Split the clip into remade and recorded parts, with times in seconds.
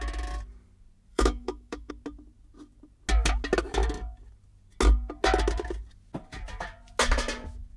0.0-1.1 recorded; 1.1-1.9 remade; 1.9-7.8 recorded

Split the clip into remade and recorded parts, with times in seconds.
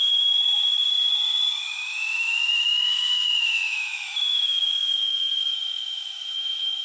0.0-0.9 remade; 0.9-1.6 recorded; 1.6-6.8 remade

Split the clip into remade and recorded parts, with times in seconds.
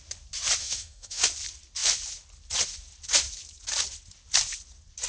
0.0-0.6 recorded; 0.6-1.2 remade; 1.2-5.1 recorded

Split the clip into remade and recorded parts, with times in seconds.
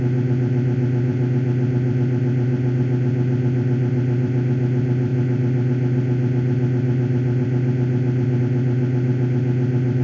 0.0-10.0 recorded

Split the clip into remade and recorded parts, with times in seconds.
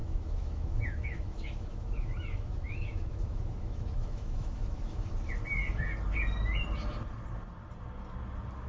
0.0-5.1 remade; 5.1-8.7 recorded